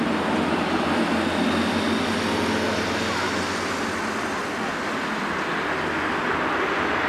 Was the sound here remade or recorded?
recorded